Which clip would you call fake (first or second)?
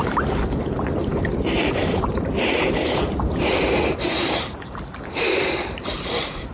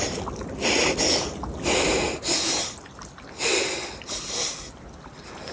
first